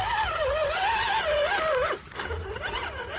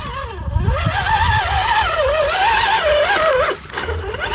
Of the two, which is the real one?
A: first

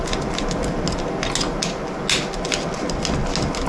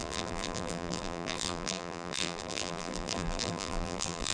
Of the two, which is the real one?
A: first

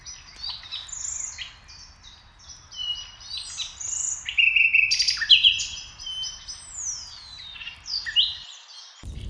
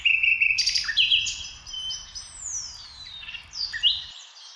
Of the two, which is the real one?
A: first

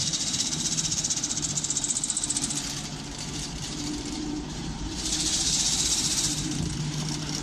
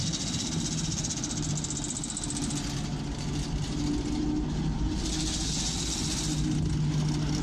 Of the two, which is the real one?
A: second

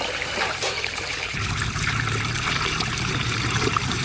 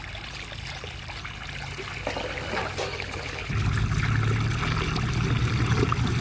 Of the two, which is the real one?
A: second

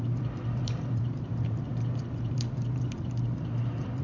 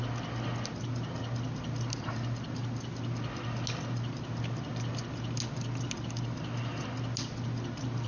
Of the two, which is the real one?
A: second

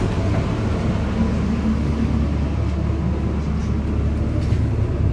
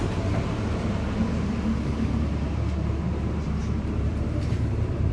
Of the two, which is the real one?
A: first